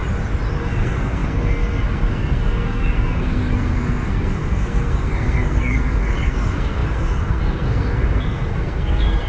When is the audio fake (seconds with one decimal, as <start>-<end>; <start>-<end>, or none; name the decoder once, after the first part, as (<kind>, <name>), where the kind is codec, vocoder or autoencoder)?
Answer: 0.6-9.3 (codec, SNAC)